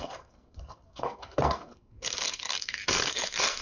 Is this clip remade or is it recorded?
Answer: remade